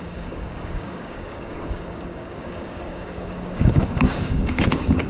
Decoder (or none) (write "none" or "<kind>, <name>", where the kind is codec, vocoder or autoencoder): codec, DAC